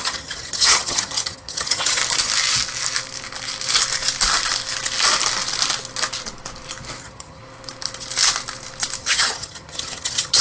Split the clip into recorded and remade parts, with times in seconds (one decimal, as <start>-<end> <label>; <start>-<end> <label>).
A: 0.0-2.0 remade; 2.0-7.0 recorded; 7.0-7.4 remade; 7.4-9.0 recorded; 9.0-10.4 remade